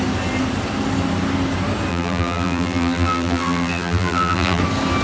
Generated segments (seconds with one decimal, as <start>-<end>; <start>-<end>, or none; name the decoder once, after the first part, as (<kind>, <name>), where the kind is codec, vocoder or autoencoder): 1.9-4.6 (vocoder, BigVGAN v2)